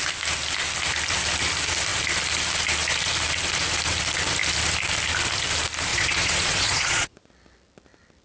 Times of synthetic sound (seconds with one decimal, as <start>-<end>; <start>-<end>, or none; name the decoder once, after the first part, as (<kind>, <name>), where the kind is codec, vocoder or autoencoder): 5.9-7.3 (vocoder, Vocos)